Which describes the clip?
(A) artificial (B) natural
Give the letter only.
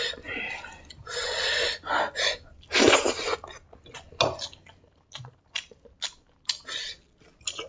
B